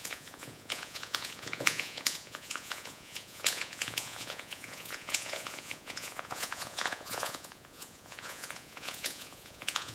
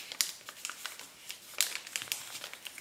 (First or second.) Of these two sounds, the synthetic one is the first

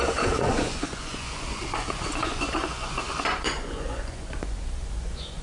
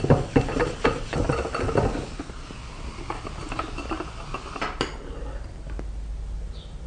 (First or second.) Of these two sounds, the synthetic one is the first